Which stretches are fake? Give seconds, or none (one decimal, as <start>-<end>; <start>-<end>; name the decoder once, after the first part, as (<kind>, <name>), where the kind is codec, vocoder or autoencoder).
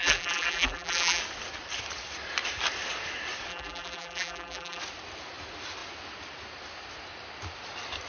0.0-1.2 (vocoder, BigVGAN v2); 3.5-4.8